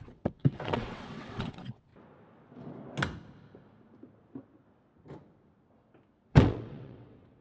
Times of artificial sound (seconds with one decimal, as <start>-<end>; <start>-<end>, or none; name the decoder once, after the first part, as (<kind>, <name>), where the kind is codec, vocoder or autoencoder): 0.0-1.9 (vocoder, WaveNeXt); 6.3-7.4